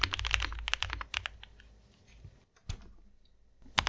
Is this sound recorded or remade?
recorded